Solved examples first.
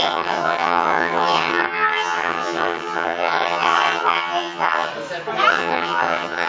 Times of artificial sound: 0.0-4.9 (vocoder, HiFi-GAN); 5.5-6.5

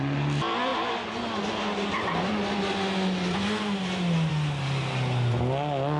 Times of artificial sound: none

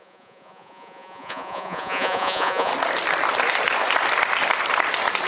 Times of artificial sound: 0.0-2.7 (vocoder, Vocos)

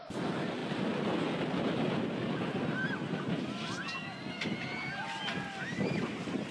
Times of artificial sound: none